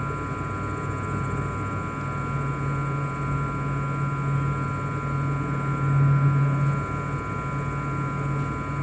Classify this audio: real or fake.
real